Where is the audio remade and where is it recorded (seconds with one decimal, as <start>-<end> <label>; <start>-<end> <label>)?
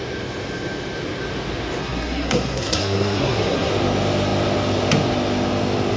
0.0-1.8 recorded; 1.8-3.7 remade; 3.7-6.0 recorded